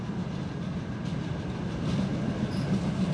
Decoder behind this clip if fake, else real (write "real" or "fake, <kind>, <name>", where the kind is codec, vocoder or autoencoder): real